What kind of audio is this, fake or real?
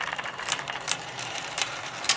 fake